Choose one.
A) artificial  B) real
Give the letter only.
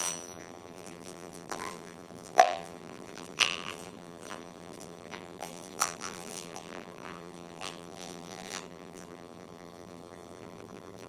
A